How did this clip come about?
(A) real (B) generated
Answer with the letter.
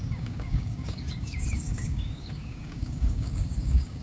B